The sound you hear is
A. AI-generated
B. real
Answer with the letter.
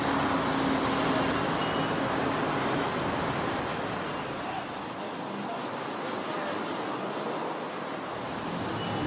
B